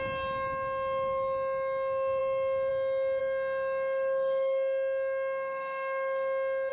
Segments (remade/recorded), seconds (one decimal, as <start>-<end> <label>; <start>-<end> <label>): 0.0-3.2 recorded; 3.2-6.7 remade